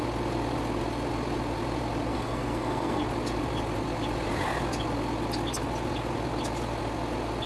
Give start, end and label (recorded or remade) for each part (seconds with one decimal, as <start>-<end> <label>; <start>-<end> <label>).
0.0-2.1 recorded; 2.1-3.0 remade; 3.0-7.5 recorded